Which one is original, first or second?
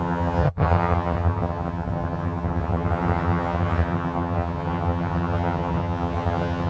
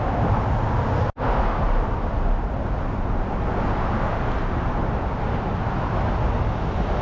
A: second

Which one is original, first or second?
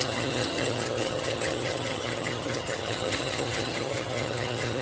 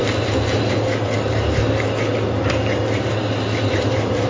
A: second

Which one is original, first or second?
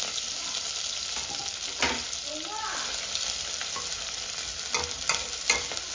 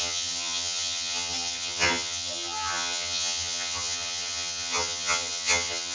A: first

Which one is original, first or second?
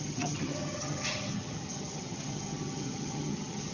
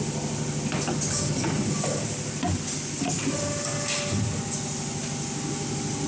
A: second